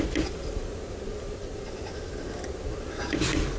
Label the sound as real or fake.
real